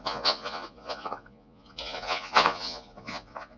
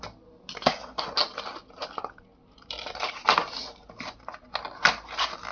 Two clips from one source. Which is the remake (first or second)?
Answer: first